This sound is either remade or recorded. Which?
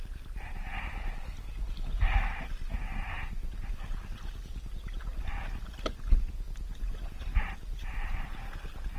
recorded